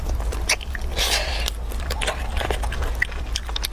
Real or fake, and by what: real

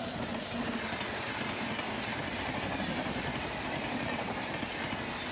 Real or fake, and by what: real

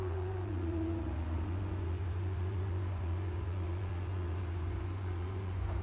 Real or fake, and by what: fake, vocoder, Vocos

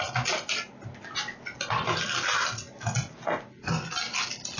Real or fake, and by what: real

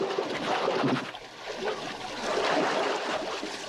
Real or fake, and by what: real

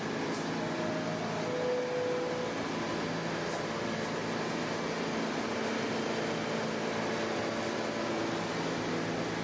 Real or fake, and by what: real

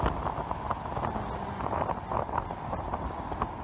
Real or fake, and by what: real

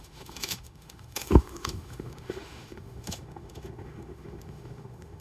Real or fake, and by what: fake, autoencoder, DAC-VAE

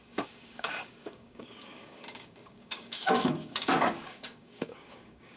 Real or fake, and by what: fake, codec, DAC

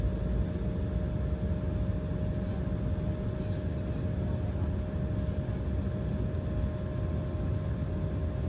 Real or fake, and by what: real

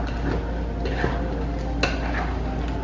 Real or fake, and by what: real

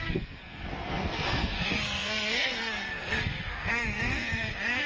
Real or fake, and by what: fake, codec, SNAC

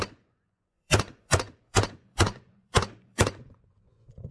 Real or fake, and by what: fake, vocoder, Vocos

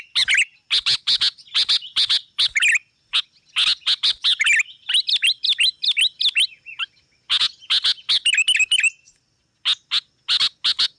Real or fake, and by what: real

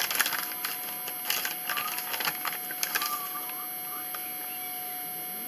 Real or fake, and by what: real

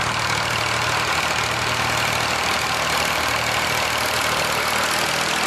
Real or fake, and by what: real